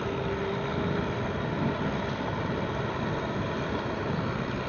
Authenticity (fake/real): real